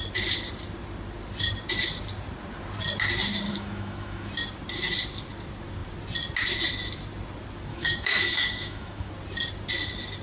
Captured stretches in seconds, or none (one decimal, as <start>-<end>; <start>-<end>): 0.0-3.5; 4.3-7.7; 9.1-10.2